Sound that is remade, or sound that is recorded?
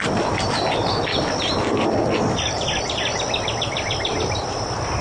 recorded